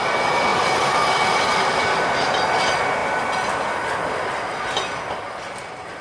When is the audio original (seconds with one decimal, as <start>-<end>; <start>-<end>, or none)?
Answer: 0.0-0.5; 1.8-6.0